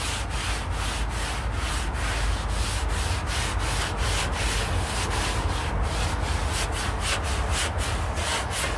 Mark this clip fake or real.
real